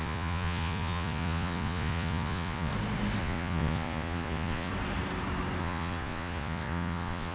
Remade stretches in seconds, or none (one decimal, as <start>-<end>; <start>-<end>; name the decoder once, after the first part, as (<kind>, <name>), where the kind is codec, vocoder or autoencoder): 0.0-2.7 (vocoder, Vocos); 3.2-4.7; 5.6-7.3